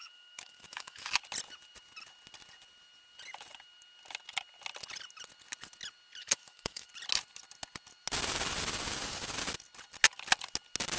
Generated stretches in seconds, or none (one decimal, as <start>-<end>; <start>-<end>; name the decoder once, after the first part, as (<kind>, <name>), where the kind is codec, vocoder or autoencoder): 0.0-1.1 (autoencoder, DAC-VAE); 6.2-6.9